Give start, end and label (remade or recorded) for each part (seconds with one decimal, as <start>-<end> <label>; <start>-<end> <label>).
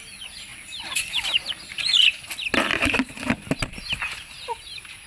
0.0-0.5 recorded; 0.5-2.3 remade; 2.3-5.1 recorded